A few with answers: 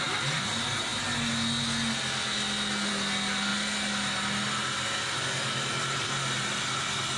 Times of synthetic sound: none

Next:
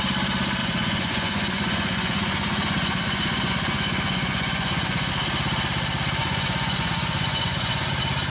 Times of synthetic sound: 0.6-5.1; 6.2-7.9

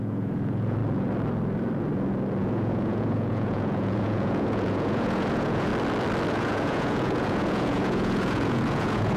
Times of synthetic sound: 0.0-0.8; 2.4-5.7; 6.3-9.2